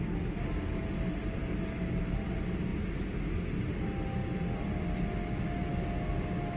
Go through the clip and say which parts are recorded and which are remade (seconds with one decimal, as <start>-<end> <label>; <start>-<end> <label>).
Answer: 0.0-1.4 recorded; 1.4-2.0 remade; 2.0-6.6 recorded